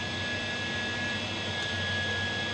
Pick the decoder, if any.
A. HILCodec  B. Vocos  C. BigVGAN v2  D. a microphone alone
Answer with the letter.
D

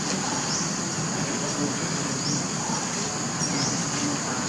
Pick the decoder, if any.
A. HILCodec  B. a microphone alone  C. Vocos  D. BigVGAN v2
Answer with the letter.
B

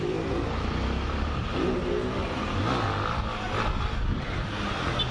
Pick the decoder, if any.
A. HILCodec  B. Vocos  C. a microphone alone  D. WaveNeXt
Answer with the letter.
C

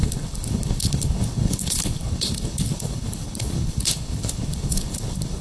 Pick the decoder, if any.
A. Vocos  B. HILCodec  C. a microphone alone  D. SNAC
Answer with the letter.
B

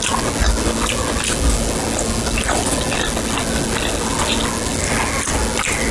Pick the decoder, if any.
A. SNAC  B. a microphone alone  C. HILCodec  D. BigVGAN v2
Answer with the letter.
B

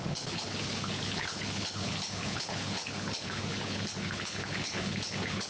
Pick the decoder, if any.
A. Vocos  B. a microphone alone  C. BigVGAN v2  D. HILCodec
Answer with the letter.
D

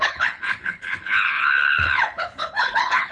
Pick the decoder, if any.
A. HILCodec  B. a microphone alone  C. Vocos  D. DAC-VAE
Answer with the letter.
A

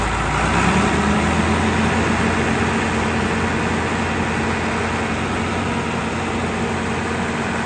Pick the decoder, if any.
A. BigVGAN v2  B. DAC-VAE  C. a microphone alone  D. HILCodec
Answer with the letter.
C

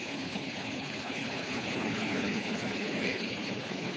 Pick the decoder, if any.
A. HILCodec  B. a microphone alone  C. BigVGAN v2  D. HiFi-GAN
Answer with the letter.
A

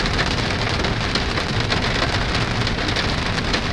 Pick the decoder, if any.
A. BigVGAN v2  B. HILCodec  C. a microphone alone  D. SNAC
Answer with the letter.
C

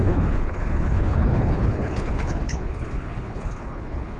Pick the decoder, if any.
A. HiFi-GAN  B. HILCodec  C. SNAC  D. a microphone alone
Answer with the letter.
B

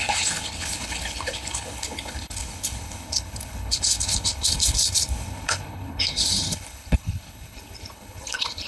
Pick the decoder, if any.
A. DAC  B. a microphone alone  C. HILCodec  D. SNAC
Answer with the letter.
C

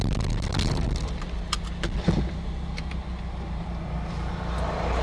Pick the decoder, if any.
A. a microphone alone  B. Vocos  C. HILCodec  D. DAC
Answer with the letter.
A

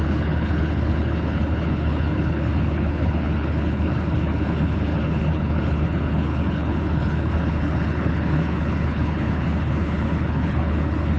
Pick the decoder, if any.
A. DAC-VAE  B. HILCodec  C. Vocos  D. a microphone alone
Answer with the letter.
B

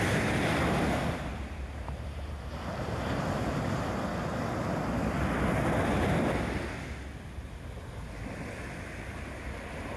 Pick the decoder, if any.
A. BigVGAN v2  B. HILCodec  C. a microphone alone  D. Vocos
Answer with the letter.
C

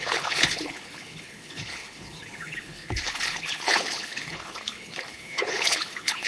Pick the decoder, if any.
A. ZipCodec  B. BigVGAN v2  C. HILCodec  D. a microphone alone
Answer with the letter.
C